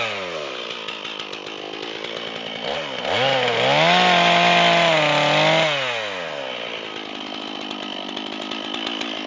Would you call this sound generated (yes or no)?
no